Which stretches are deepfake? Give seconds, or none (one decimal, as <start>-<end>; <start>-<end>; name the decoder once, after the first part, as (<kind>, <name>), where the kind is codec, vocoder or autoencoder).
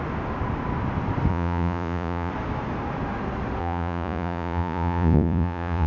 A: 1.3-2.3 (vocoder, Vocos); 3.6-5.9